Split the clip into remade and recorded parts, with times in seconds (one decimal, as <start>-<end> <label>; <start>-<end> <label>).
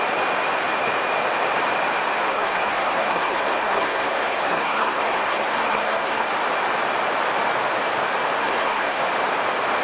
0.0-2.3 recorded; 2.3-6.3 remade; 6.3-8.4 recorded; 8.4-9.0 remade; 9.0-9.8 recorded